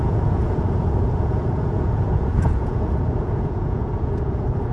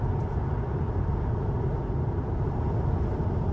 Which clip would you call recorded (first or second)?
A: second